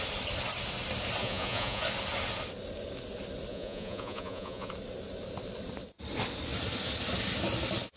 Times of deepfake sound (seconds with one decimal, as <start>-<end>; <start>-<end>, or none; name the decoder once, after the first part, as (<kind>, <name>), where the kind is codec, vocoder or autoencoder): 1.2-1.8 (vocoder, Vocos); 3.5-4.7